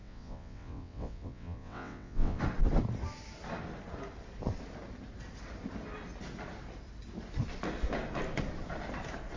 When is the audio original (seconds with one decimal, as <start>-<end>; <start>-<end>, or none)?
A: 2.4-9.4